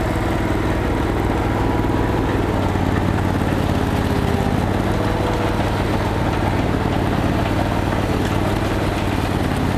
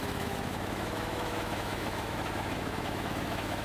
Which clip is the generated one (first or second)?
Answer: second